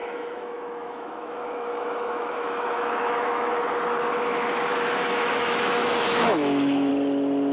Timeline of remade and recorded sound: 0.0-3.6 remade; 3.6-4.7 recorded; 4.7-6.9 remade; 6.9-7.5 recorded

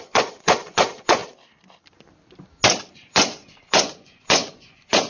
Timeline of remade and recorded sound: 0.0-1.2 remade; 1.2-2.9 recorded; 2.9-5.1 remade

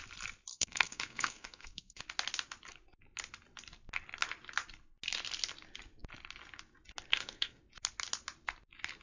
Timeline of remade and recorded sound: 0.0-0.5 recorded; 0.5-2.0 remade; 2.0-7.1 recorded; 7.1-7.6 remade; 7.6-9.0 recorded

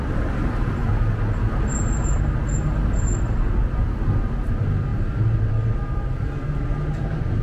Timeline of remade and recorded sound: 0.0-7.4 recorded

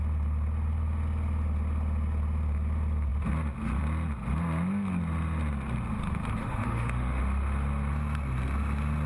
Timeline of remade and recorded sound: 0.0-6.4 recorded; 6.4-7.2 remade; 7.2-9.1 recorded

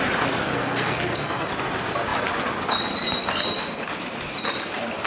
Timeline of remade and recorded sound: 0.0-0.4 recorded; 0.4-1.5 remade; 1.5-5.1 recorded

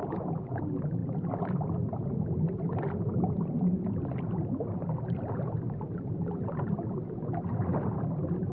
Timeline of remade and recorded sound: 0.0-0.6 remade; 0.6-8.5 recorded